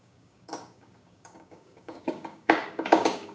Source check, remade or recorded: remade